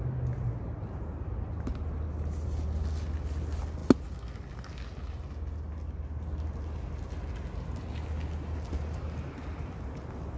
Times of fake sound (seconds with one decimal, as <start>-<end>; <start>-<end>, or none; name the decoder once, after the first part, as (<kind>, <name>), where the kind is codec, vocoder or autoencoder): none